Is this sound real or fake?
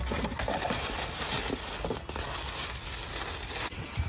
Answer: real